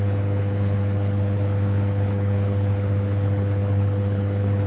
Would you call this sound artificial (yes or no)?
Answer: yes